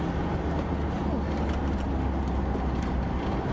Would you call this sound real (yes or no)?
yes